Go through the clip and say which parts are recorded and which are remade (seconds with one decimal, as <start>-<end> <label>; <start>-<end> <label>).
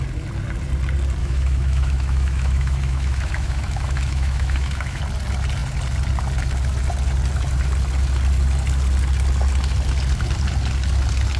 0.0-1.2 recorded; 1.2-5.0 remade; 5.0-11.4 recorded